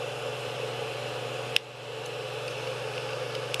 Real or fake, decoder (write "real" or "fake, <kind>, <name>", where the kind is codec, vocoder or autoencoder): real